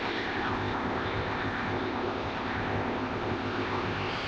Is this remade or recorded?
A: remade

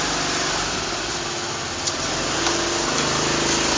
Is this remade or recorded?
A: recorded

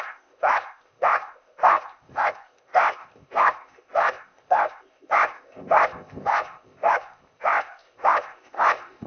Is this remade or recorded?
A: remade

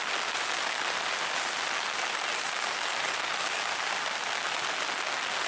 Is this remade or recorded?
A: recorded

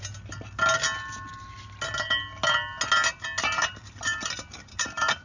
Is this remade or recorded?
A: recorded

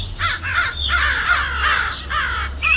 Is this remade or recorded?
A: recorded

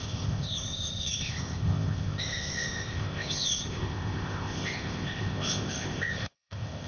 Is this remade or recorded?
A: remade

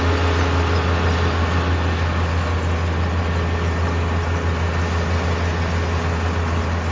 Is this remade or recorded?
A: recorded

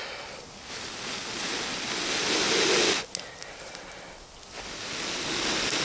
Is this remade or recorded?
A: recorded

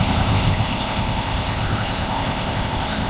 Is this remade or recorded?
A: remade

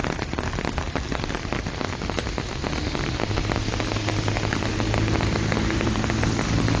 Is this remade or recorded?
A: recorded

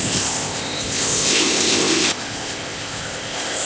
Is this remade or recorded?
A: remade